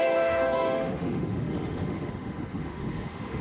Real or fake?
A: fake